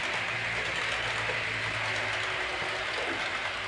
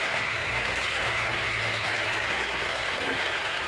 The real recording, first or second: first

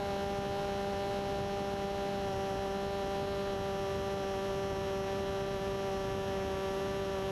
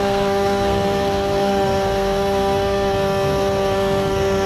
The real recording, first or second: first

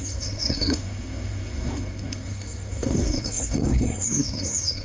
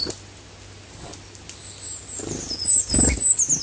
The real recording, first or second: second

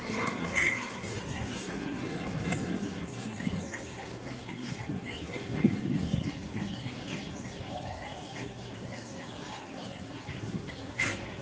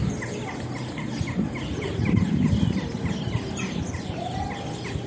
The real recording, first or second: second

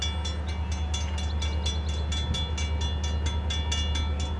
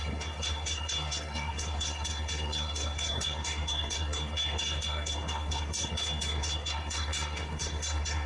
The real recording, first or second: first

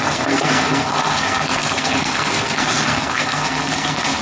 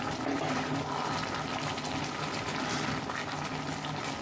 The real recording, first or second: second